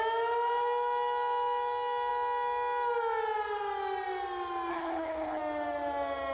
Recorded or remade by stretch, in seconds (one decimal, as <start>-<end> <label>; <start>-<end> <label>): 0.0-4.7 recorded; 4.7-5.4 remade; 5.4-6.3 recorded